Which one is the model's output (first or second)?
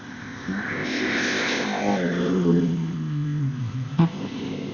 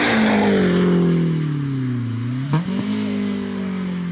first